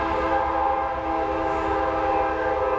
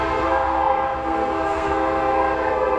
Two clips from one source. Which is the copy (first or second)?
second